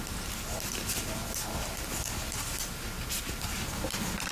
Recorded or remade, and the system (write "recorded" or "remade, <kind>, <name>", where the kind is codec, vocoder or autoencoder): recorded